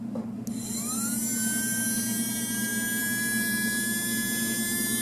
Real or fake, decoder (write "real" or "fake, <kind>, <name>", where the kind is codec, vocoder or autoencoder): real